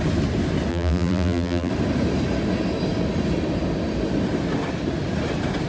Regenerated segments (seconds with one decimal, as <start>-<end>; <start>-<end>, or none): 0.7-1.7